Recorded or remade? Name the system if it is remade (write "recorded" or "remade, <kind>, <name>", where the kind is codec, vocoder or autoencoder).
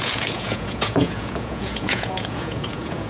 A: remade, vocoder, Vocos